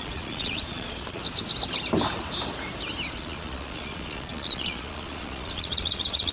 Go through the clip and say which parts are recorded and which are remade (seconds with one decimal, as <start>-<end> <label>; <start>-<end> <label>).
0.0-1.2 remade; 1.2-3.1 recorded; 3.1-6.3 remade